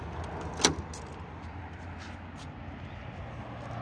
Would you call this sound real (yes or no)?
yes